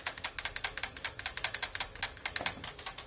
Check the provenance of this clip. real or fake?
real